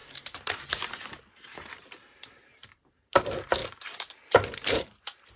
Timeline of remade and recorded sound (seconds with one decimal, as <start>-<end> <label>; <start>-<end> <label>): 0.0-3.6 remade; 3.6-4.7 recorded; 4.7-5.4 remade